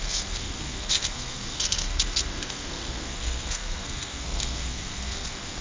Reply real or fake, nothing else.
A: fake